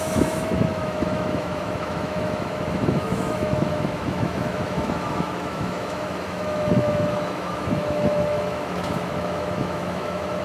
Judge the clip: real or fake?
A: fake